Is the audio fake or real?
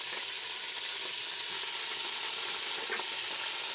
real